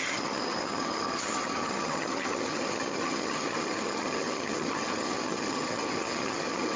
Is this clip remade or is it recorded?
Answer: remade